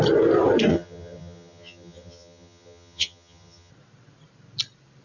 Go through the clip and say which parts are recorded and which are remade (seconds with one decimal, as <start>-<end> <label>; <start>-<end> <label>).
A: 0.0-0.7 recorded; 0.7-3.7 remade; 3.7-5.0 recorded